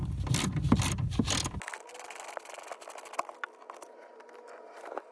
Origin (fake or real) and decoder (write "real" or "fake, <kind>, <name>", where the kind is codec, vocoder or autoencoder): real